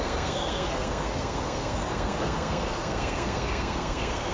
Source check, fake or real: fake